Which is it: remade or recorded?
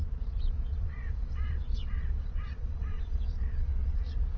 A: remade